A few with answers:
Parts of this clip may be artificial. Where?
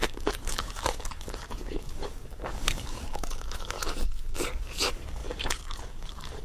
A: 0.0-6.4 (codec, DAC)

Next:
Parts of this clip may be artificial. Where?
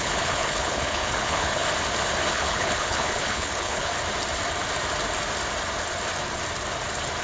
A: 0.0-1.6 (codec, HILCodec); 2.3-3.9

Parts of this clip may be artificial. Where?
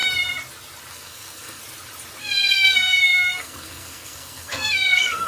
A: 0.9-1.6 (codec, SNAC); 2.2-5.3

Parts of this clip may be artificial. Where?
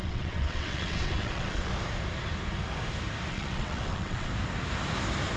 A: 0.0-1.7 (vocoder, WaveNeXt); 3.3-4.3